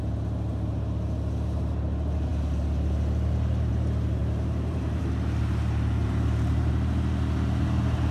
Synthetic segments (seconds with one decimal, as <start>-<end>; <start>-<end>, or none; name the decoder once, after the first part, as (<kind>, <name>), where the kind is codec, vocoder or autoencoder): 4.2-5.0 (vocoder, BigVGAN v2); 6.0-6.7